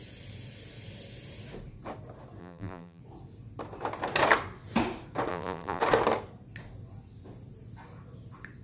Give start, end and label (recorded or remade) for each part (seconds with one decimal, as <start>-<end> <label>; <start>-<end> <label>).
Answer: 0.0-2.4 recorded; 2.4-3.0 remade; 3.0-5.3 recorded; 5.3-5.8 remade; 5.8-8.6 recorded